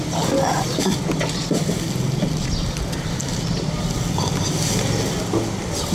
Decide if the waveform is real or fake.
real